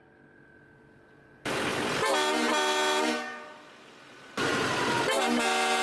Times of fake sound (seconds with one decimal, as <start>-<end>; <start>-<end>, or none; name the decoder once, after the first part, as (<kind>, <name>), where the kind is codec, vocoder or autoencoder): none

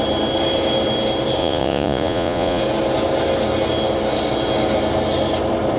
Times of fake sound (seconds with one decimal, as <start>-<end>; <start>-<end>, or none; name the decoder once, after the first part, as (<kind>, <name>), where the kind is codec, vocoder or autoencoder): 1.4-2.6 (vocoder, Vocos)

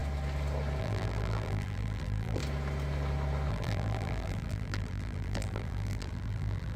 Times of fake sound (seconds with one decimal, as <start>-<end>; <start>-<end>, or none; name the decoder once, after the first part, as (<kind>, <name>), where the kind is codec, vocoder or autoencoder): 0.8-2.4 (vocoder, BigVGAN v2); 3.5-6.8

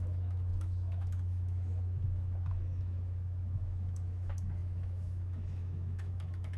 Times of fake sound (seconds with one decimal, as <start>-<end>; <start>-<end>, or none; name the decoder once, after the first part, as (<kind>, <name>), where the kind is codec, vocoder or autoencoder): 0.0-6.6 (autoencoder, DAC-VAE)